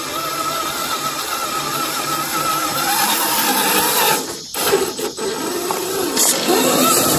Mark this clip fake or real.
real